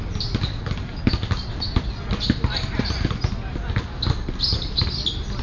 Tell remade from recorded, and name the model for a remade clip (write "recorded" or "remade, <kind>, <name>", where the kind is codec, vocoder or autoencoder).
recorded